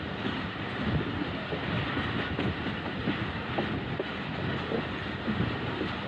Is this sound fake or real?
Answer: real